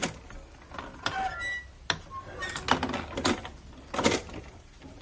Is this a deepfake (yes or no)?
no